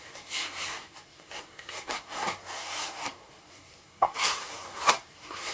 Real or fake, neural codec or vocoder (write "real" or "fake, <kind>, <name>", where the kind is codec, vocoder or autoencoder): fake, codec, SNAC